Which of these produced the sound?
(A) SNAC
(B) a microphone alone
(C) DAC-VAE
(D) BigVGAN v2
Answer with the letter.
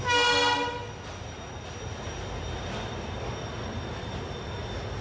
B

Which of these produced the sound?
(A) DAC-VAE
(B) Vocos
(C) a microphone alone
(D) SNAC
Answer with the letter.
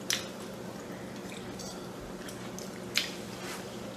C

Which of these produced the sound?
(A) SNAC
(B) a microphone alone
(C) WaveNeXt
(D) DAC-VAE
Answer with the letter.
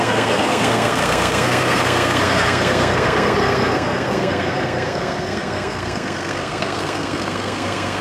A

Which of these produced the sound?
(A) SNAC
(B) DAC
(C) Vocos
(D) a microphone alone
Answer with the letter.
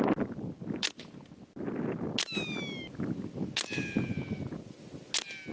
D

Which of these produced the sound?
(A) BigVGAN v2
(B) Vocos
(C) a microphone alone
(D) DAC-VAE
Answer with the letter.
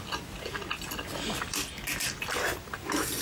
C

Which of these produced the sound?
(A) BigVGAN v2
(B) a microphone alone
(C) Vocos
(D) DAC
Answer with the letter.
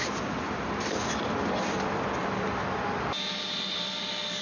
B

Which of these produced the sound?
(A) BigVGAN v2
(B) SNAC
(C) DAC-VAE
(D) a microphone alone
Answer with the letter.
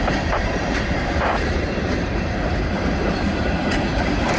A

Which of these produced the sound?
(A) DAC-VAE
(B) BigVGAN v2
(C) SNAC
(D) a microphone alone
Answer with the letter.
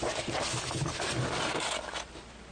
D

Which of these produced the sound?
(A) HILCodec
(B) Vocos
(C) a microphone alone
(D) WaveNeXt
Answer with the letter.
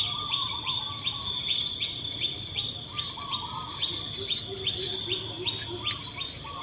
C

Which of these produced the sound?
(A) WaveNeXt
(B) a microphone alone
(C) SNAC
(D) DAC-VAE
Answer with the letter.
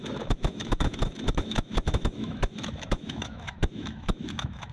D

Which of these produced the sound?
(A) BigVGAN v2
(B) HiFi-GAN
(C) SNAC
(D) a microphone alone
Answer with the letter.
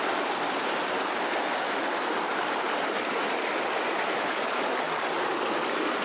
D